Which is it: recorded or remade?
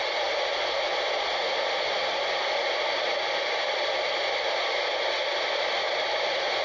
recorded